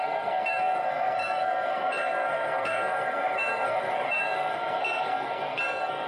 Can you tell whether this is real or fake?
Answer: fake